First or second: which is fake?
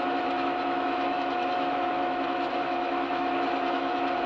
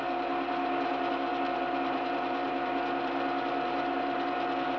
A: first